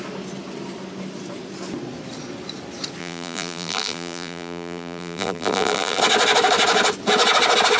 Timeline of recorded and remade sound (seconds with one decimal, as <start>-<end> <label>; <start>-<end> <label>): 0.0-3.0 recorded; 3.0-6.0 remade; 6.0-7.8 recorded